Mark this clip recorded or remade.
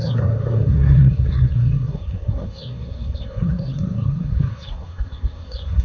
remade